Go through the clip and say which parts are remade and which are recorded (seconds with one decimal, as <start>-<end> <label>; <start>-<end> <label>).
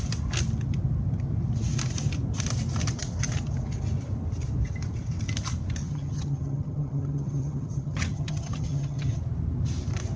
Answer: 0.0-5.8 recorded; 5.8-9.2 remade; 9.2-10.2 recorded